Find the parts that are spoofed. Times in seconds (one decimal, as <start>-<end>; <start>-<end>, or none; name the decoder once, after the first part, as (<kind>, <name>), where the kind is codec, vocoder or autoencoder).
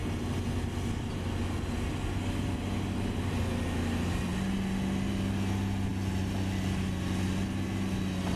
none